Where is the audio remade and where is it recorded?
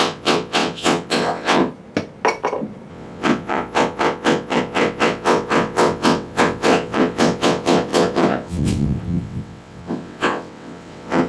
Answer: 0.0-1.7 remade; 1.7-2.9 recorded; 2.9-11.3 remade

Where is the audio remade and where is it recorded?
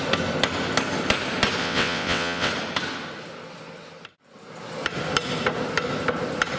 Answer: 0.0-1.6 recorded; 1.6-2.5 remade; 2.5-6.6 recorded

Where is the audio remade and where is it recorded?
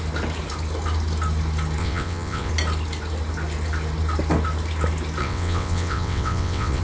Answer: 0.0-1.8 recorded; 1.8-2.5 remade; 2.5-5.2 recorded; 5.2-6.8 remade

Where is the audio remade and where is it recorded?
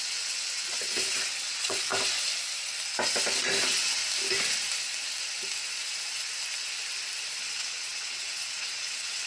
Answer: 0.0-1.9 remade; 1.9-3.6 recorded; 3.6-4.0 remade; 4.0-7.4 recorded; 7.4-9.3 remade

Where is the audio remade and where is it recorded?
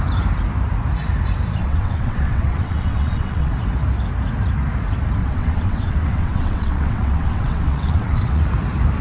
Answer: 0.0-1.6 recorded; 1.6-3.5 remade; 3.5-5.2 recorded; 5.2-8.4 remade; 8.4-9.0 recorded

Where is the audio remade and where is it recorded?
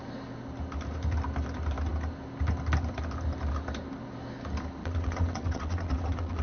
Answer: 0.0-4.8 recorded; 4.8-6.4 remade